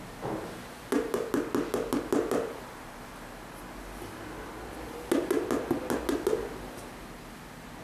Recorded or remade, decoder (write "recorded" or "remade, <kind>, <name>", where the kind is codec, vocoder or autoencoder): recorded